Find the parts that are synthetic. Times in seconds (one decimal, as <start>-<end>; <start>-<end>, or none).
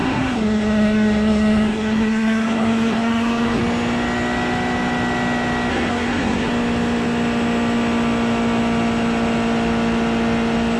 0.0-3.6; 5.7-6.5